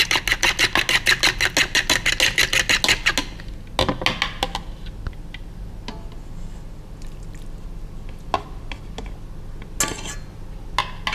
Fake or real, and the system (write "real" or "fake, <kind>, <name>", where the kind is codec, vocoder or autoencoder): real